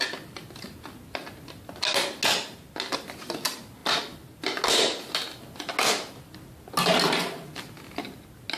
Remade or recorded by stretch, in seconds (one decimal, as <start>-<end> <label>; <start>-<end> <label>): 0.0-8.6 recorded